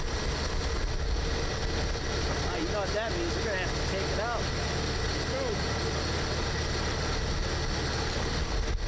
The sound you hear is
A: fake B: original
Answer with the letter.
B